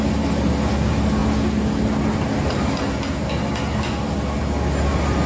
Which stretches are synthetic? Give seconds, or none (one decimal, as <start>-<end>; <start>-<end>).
none